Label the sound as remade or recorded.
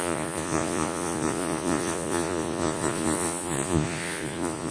remade